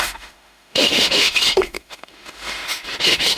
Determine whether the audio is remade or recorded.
remade